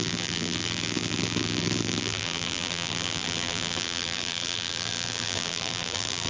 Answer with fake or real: fake